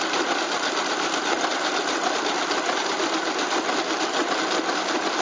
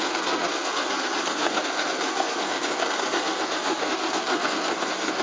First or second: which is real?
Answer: first